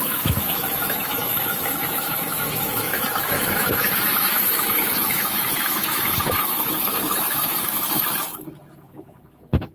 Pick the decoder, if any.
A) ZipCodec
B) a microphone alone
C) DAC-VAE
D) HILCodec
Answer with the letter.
C